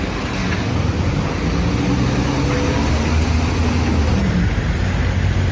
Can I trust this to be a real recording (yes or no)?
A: yes